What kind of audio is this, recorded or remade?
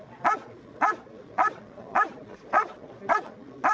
remade